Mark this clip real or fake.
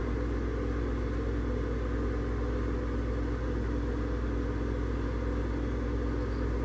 real